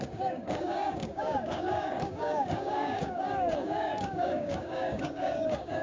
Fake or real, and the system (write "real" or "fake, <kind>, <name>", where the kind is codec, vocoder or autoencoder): fake, codec, DAC